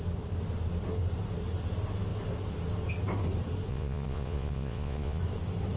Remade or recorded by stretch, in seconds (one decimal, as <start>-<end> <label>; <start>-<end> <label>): 0.0-3.7 recorded; 3.7-5.2 remade; 5.2-5.8 recorded